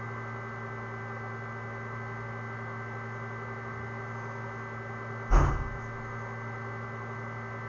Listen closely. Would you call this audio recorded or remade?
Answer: recorded